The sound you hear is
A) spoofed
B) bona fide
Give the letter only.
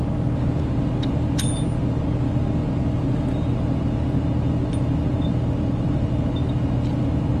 B